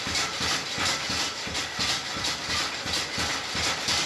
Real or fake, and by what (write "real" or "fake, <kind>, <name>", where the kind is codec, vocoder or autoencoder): fake, vocoder, BigVGAN v2